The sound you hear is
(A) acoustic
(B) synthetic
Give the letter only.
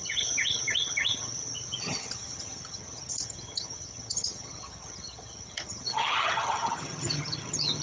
B